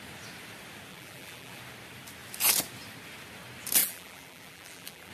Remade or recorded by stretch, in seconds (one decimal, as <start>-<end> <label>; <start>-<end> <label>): 0.0-0.9 recorded; 0.9-1.6 remade; 1.6-3.8 recorded; 3.8-5.1 remade